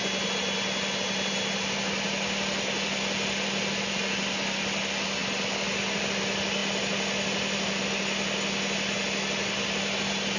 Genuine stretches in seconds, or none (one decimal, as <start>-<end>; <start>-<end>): 0.0-10.4